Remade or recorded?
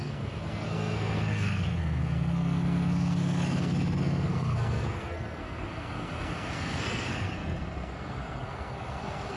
remade